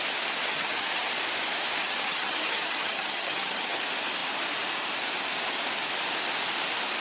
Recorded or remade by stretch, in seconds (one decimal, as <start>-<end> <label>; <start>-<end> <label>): 0.0-0.4 recorded; 0.4-1.0 remade; 1.0-1.8 recorded; 1.8-3.8 remade; 3.8-7.0 recorded